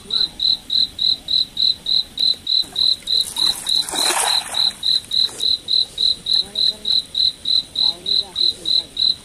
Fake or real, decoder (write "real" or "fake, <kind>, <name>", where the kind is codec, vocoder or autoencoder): real